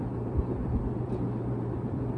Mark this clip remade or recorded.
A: remade